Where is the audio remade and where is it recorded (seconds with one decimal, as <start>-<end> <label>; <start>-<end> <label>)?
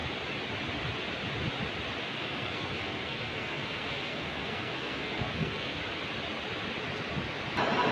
0.0-2.0 recorded; 2.0-5.8 remade; 5.8-7.9 recorded